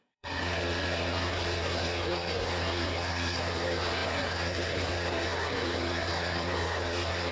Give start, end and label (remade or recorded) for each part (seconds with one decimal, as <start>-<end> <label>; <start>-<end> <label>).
0.0-7.3 remade